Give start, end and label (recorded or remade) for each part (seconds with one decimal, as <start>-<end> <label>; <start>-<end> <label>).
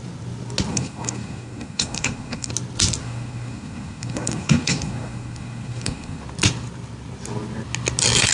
0.0-0.7 recorded; 0.7-2.5 remade; 2.5-3.0 recorded; 3.0-6.2 remade; 6.2-8.3 recorded